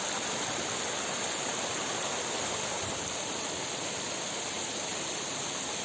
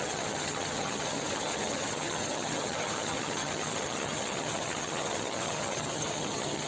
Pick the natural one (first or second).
first